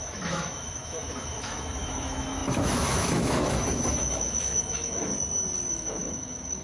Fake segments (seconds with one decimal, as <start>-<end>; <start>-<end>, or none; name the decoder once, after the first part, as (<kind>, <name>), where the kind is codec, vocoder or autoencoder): 0.0-5.1 (autoencoder, DAC-VAE); 5.7-6.6